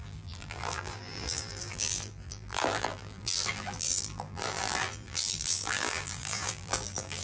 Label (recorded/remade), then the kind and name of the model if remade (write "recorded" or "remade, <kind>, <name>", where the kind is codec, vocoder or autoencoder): remade, vocoder, BigVGAN v2